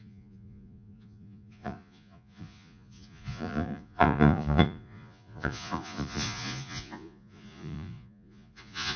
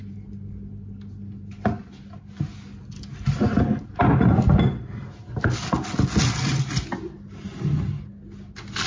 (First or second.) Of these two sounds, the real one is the second